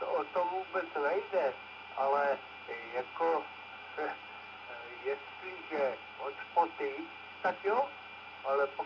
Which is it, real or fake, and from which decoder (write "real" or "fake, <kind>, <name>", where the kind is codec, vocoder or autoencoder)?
real